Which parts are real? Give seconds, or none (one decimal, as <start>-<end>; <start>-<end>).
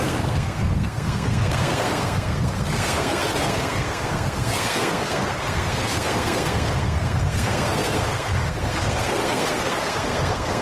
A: none